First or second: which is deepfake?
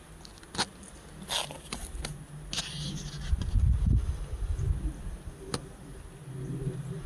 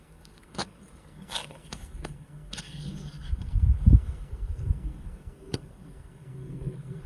second